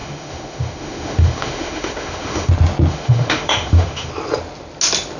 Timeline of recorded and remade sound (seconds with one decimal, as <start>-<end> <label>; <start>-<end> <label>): 0.0-2.5 remade; 2.5-2.9 recorded; 2.9-4.1 remade; 4.1-5.2 recorded